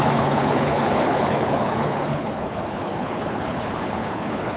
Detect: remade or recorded remade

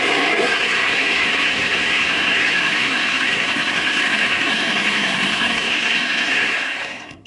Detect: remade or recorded remade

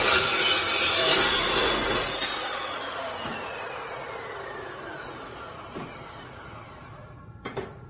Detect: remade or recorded remade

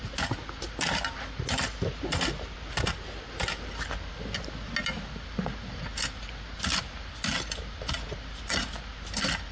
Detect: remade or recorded recorded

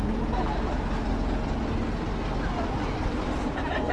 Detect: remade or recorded recorded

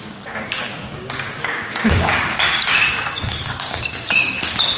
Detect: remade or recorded remade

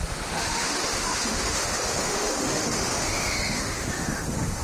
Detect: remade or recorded remade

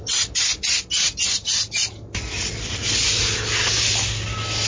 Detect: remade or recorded recorded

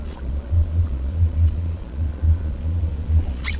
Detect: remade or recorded remade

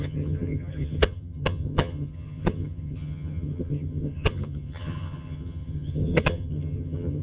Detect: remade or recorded remade